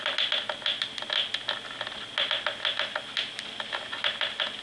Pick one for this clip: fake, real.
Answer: real